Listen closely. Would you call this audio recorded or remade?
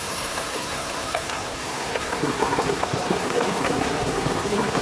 remade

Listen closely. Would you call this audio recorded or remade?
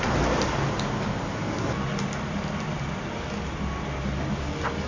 recorded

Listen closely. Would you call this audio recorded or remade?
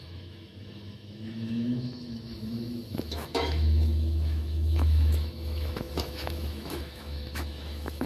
remade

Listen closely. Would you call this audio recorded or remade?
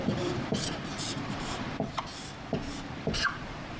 remade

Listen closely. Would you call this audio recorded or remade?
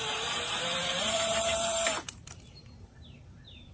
remade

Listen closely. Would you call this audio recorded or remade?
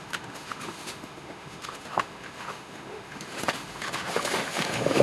remade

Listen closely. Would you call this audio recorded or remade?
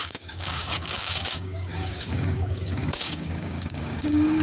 remade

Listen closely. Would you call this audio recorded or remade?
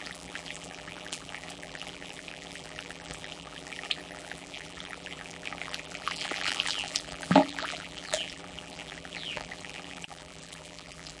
remade